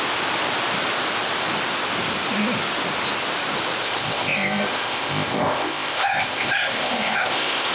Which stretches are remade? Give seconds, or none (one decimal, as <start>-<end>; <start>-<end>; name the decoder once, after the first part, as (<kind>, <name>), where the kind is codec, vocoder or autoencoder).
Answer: 3.8-7.7 (codec, ZipCodec)